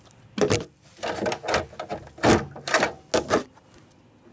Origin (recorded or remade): recorded